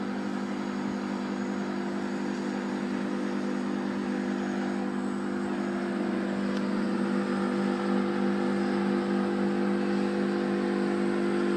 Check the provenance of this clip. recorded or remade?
recorded